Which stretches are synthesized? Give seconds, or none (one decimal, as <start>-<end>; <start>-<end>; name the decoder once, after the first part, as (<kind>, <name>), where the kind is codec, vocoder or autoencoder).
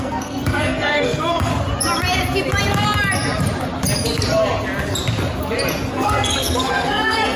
0.0-1.5 (codec, SNAC); 5.9-7.4